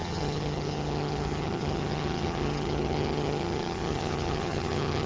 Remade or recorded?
remade